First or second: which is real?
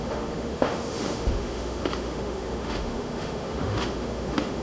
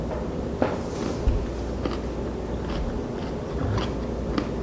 second